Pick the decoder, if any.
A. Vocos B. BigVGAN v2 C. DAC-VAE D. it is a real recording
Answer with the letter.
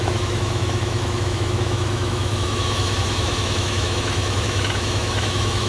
C